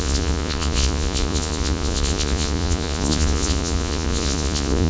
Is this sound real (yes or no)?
no